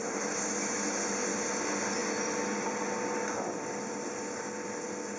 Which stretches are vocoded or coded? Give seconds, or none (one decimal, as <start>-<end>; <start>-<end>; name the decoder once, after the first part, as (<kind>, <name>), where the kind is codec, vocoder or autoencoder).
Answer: none